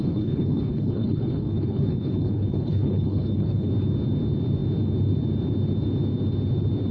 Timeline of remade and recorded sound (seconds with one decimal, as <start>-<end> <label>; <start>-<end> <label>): 0.0-3.7 remade; 3.7-6.9 recorded